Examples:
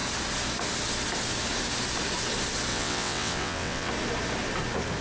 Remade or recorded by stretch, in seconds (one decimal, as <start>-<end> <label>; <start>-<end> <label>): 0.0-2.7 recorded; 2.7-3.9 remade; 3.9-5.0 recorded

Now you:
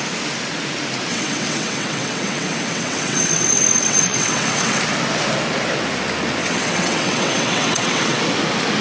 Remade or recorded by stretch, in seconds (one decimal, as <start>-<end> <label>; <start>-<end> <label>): 0.0-1.1 recorded; 1.1-4.8 remade; 4.8-6.4 recorded; 6.4-8.2 remade; 8.2-8.8 recorded

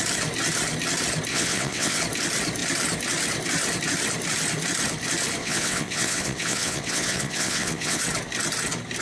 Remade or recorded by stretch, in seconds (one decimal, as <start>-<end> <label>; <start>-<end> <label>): 0.0-1.3 recorded; 1.3-2.0 remade; 2.0-5.4 recorded; 5.4-8.0 remade; 8.0-9.0 recorded